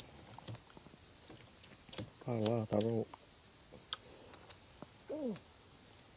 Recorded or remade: recorded